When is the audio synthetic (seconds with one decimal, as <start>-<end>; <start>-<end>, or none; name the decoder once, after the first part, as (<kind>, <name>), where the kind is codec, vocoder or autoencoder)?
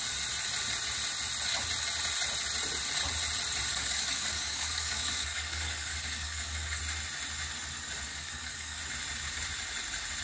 3.7-6.8 (codec, DAC); 8.1-8.8